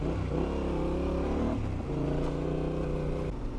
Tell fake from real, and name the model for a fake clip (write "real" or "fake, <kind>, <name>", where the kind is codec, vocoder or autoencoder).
real